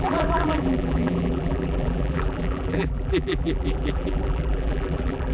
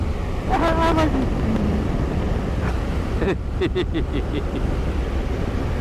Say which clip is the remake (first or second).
first